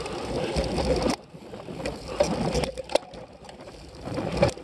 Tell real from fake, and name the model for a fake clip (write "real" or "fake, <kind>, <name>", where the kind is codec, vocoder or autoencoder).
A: real